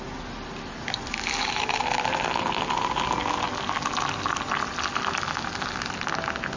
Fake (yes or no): no